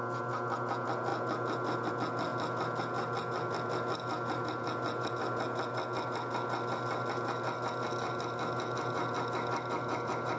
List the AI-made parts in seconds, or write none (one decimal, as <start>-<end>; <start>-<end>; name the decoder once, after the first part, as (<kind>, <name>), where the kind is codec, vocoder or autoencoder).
none